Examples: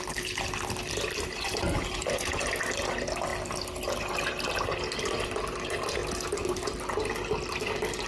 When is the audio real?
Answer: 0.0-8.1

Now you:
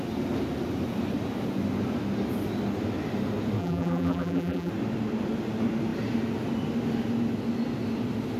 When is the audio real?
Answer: 0.0-3.6; 4.7-8.4

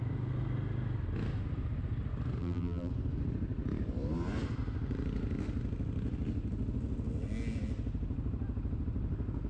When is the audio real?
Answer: 0.0-2.4; 2.9-9.5

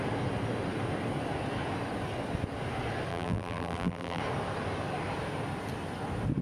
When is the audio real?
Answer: 0.0-3.1; 4.2-6.4

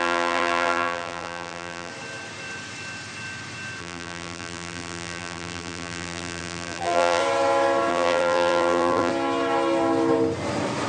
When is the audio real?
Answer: 1.9-3.8; 7.2-7.9; 9.1-10.9

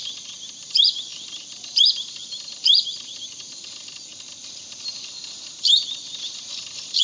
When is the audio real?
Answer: 0.0-0.5; 1.1-5.3

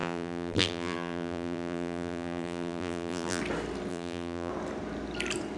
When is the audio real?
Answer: 3.4-3.9; 4.5-5.6